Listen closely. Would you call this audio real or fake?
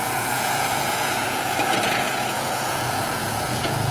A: fake